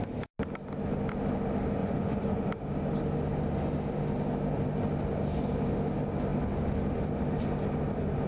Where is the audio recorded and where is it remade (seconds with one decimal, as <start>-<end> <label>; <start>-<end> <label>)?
0.0-1.8 recorded; 1.8-2.5 remade; 2.5-8.3 recorded